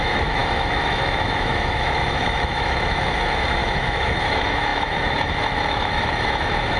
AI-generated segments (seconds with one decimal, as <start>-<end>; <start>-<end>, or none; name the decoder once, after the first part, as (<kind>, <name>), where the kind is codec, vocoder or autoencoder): 0.0-6.8 (autoencoder, DAC-VAE)